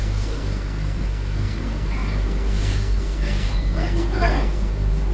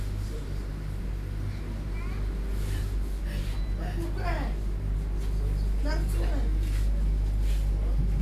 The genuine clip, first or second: second